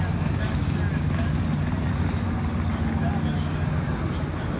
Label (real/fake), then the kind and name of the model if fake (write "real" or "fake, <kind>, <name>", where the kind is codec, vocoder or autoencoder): real